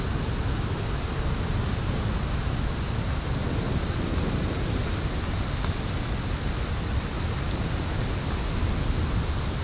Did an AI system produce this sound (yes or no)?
no